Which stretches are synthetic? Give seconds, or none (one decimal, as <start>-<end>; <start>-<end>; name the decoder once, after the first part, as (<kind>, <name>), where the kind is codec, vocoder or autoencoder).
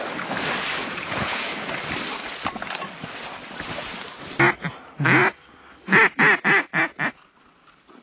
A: 0.8-1.7 (vocoder, Vocos)